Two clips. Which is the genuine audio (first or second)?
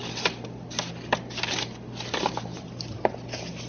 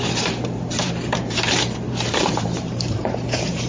first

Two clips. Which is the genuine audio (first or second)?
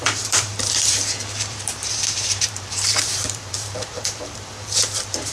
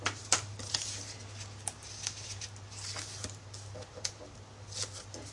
second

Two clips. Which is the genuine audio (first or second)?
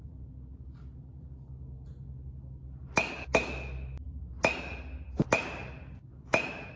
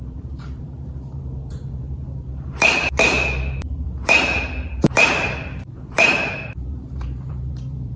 first